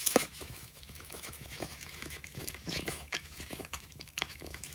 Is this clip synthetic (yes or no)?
yes